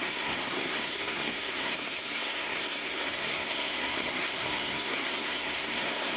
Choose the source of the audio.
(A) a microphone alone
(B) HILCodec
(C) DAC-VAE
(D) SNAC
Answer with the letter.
D